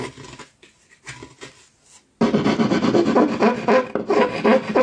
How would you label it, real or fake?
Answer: real